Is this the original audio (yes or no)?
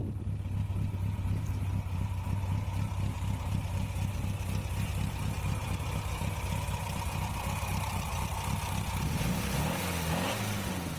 yes